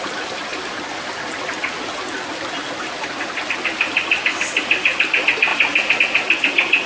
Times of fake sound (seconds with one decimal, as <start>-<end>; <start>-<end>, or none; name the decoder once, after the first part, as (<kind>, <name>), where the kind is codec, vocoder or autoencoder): none